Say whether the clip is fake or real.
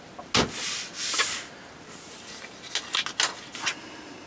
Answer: real